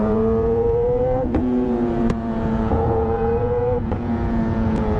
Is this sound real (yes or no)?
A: no